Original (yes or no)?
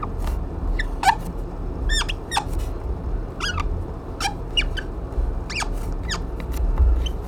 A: yes